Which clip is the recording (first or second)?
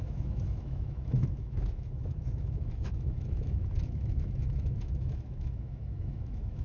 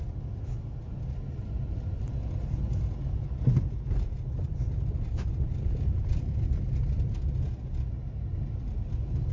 second